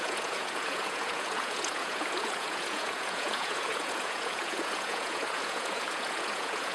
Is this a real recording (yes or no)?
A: no